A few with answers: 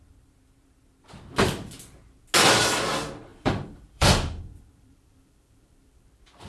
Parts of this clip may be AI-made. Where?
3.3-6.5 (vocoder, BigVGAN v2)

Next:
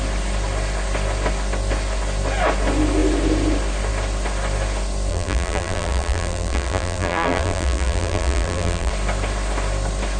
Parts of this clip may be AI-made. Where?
5.1-8.9 (vocoder, BigVGAN v2)